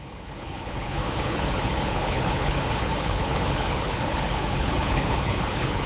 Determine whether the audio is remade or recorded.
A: remade